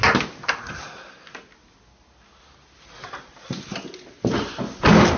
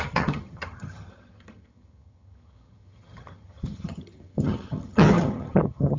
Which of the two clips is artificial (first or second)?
second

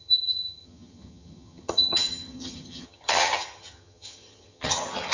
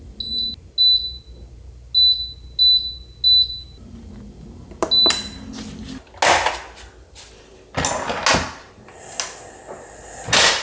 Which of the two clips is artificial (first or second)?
first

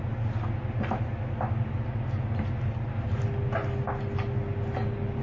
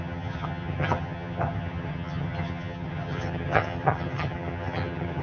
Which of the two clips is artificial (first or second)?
second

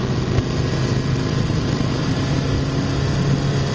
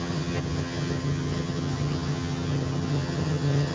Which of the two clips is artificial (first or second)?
second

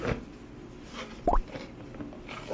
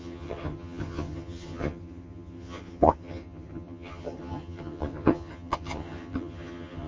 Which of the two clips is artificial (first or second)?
second